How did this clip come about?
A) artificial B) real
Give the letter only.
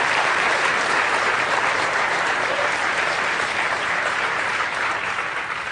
A